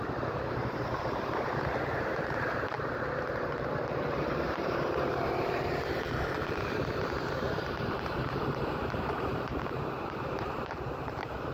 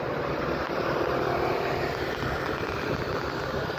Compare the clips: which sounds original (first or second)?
second